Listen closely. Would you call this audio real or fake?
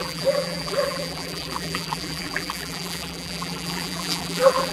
fake